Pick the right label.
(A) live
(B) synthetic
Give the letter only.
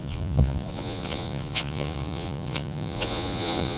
B